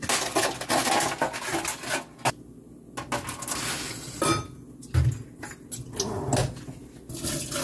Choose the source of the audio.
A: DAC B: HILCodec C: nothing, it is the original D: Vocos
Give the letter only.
C